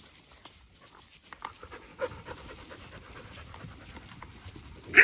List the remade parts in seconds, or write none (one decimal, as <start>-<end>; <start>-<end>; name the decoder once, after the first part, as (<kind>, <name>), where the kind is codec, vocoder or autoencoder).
1.9-5.0 (vocoder, BigVGAN v2)